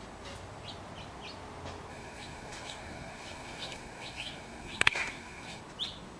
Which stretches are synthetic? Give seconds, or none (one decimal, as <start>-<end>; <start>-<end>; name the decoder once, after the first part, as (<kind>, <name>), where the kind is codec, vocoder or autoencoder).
1.9-5.6 (codec, SNAC)